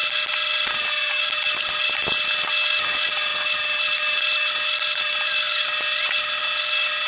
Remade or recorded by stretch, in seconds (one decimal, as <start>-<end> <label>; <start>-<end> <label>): 0.0-7.1 recorded